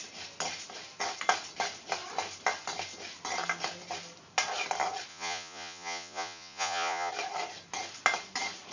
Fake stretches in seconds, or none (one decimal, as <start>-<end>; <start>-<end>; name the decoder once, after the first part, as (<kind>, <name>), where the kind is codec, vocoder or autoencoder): 5.1-7.1 (vocoder, Vocos)